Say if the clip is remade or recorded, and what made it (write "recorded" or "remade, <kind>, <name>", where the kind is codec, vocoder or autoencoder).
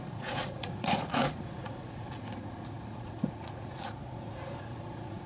remade, vocoder, Vocos